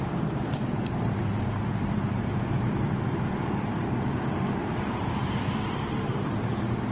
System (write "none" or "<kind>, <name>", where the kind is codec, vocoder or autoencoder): vocoder, BigVGAN v2